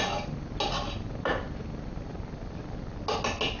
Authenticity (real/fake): real